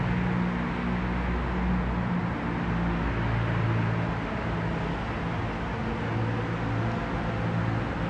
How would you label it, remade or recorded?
recorded